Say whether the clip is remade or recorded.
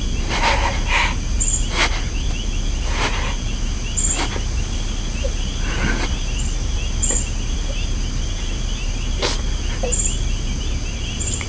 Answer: recorded